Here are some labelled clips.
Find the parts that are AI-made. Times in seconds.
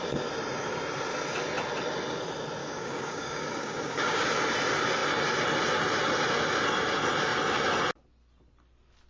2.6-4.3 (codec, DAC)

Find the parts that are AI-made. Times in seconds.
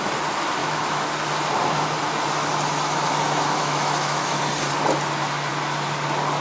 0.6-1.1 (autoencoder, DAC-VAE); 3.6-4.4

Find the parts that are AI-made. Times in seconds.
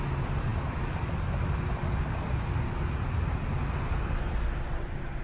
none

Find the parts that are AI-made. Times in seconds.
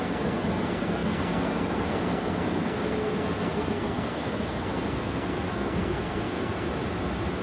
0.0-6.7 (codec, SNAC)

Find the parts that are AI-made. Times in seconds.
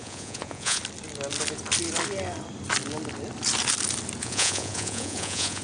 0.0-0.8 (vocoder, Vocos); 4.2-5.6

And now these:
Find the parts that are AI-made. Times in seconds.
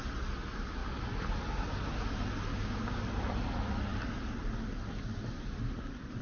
2.5-3.0 (codec, DAC)